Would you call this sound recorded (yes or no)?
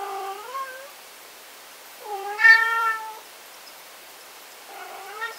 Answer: no